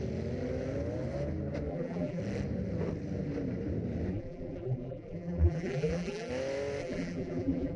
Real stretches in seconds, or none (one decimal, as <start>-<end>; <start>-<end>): 0.0-1.7; 2.2-4.1; 6.3-6.8